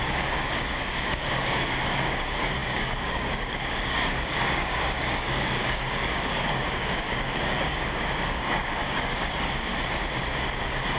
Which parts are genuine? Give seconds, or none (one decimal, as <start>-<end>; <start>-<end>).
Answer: 9.7-10.6